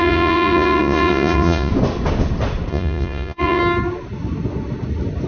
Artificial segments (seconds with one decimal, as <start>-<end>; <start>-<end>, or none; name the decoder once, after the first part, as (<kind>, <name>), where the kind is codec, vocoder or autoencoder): 0.0-1.7 (vocoder, Vocos); 2.7-3.6